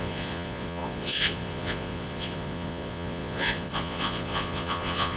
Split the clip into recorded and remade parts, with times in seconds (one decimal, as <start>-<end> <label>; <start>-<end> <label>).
0.0-5.2 remade